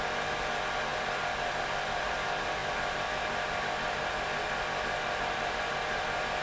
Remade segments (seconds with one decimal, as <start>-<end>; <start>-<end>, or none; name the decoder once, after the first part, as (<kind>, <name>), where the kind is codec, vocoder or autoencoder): none